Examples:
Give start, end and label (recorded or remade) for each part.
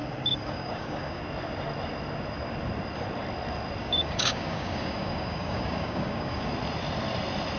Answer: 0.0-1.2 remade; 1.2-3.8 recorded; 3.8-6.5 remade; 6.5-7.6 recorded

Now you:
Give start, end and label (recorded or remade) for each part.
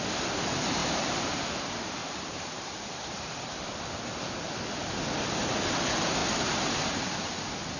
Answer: 0.0-0.8 recorded; 0.8-1.4 remade; 1.4-2.0 recorded; 2.0-3.8 remade; 3.8-6.2 recorded; 6.2-7.1 remade; 7.1-7.8 recorded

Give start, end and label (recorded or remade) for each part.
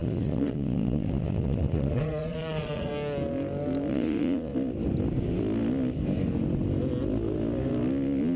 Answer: 0.0-2.9 remade; 2.9-3.9 recorded; 3.9-4.5 remade; 4.5-8.4 recorded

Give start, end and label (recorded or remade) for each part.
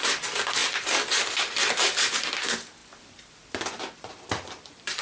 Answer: 0.0-5.0 remade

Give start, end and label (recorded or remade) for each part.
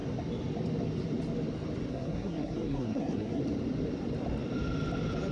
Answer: 0.0-1.9 recorded; 1.9-3.4 remade; 3.4-5.3 recorded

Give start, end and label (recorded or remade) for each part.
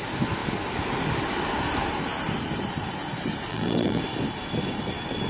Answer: 0.0-3.5 recorded; 3.5-4.0 remade; 4.0-5.3 recorded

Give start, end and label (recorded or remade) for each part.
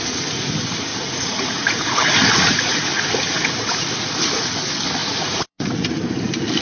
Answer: 0.0-0.9 recorded; 0.9-4.5 remade; 4.5-5.0 recorded; 5.0-5.8 remade; 5.8-6.6 recorded